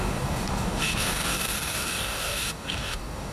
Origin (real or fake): fake